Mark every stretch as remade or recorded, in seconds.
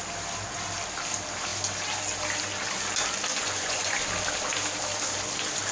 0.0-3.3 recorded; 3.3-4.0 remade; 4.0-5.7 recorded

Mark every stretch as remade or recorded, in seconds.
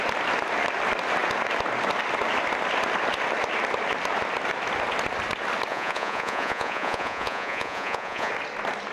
0.0-5.7 recorded; 5.7-8.3 remade; 8.3-8.9 recorded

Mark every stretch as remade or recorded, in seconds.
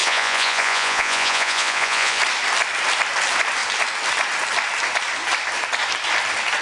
0.0-2.2 remade; 2.2-6.6 recorded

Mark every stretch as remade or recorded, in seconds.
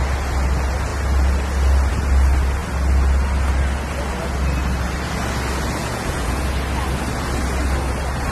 0.0-5.8 recorded; 5.8-6.4 remade; 6.4-8.3 recorded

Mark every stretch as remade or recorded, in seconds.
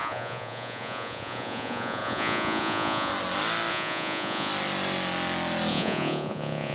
0.0-3.1 remade; 3.1-3.7 recorded; 3.7-4.5 remade; 4.5-5.7 recorded; 5.7-6.7 remade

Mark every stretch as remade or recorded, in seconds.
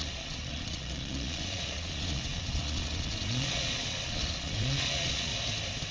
0.0-5.3 remade; 5.3-5.9 recorded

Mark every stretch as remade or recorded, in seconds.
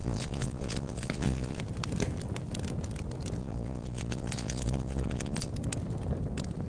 0.0-1.6 remade; 1.6-3.4 recorded; 3.4-5.5 remade; 5.5-6.7 recorded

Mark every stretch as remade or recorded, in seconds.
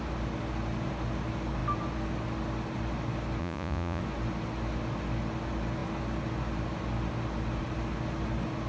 0.0-3.4 recorded; 3.4-4.0 remade; 4.0-8.7 recorded